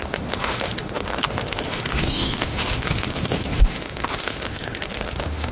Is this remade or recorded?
remade